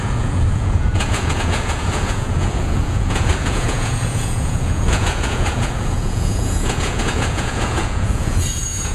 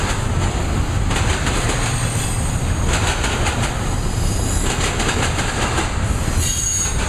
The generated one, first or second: first